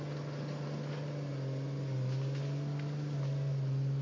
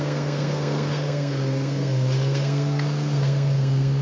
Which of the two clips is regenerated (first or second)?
second